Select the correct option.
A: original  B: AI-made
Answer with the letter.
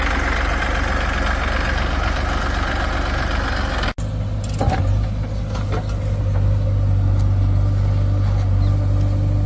A